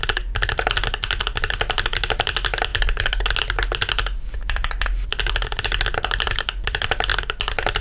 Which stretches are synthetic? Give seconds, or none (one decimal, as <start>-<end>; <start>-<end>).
0.0-2.7; 4.5-7.1